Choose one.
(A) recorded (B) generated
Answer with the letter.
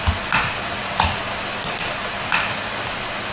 A